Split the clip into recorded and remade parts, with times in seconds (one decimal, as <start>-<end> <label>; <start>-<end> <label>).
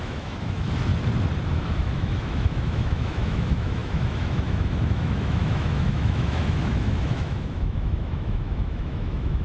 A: 0.0-0.9 remade; 0.9-1.5 recorded; 1.5-9.4 remade